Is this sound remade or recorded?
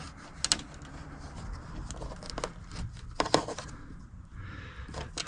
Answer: recorded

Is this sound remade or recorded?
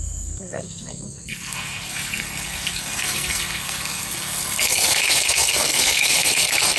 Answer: remade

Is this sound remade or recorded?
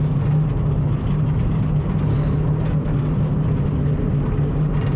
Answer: recorded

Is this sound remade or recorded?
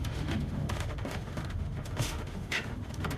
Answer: remade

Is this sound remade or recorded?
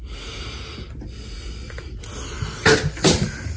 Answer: recorded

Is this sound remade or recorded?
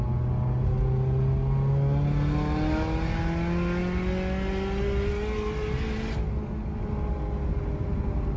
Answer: recorded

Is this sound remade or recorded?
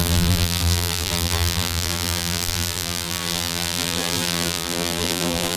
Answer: remade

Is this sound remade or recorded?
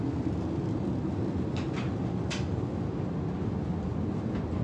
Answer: recorded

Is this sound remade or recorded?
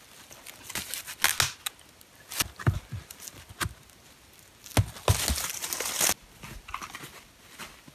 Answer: recorded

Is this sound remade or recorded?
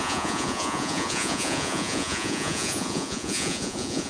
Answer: remade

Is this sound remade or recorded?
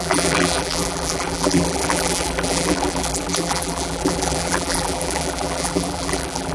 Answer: remade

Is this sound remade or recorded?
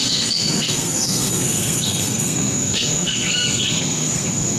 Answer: remade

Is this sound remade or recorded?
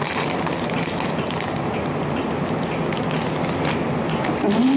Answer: recorded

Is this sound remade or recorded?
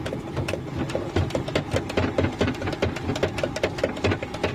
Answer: recorded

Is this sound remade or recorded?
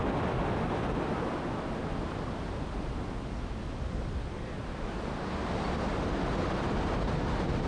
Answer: recorded